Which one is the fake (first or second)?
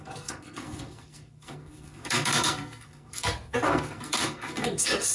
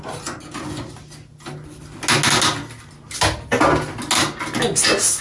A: first